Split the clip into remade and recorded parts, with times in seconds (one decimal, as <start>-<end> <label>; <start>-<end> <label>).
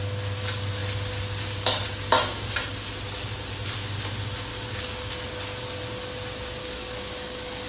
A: 0.0-4.5 recorded; 4.5-5.1 remade; 5.1-6.6 recorded; 6.6-7.7 remade